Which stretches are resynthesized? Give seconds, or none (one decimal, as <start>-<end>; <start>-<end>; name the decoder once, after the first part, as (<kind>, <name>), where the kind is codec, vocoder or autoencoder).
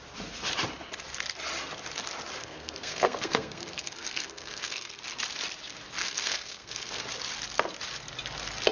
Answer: 2.4-5.0 (codec, SNAC); 6.0-7.0